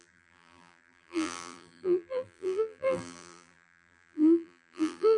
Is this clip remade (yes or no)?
yes